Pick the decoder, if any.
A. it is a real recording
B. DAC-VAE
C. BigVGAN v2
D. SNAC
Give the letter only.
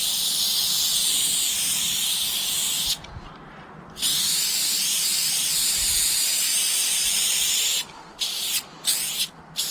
A